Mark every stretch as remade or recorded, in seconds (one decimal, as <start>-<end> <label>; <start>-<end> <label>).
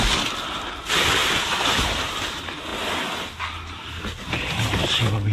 0.0-5.3 recorded